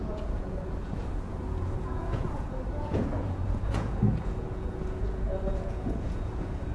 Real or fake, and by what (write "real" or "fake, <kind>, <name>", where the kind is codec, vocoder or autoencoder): fake, vocoder, Vocos